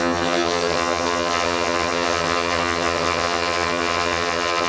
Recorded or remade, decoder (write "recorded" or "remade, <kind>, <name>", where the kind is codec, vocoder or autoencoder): remade, vocoder, HiFi-GAN